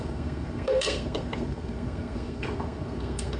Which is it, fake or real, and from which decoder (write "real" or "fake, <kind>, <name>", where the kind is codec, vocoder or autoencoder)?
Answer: fake, codec, SNAC